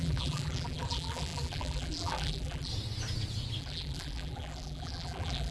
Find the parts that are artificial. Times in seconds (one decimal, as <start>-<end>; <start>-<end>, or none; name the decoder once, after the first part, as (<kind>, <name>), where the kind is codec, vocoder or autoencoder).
0.0-2.7 (vocoder, BigVGAN v2); 3.6-5.5